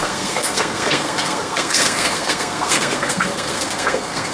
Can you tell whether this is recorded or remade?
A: remade